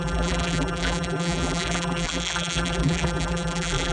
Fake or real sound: fake